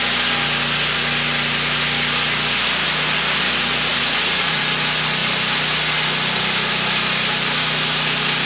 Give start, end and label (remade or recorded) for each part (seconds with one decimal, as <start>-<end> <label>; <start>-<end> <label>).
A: 0.0-3.9 recorded; 3.9-4.6 remade; 4.6-8.5 recorded